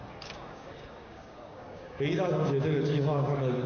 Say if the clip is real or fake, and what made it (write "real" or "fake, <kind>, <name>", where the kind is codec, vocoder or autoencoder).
fake, codec, DAC